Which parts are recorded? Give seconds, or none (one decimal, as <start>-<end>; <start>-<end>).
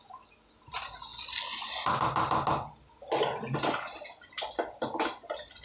0.0-5.6